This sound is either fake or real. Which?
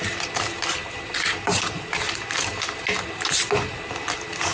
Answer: fake